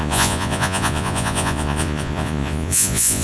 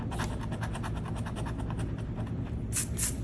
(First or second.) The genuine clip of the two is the second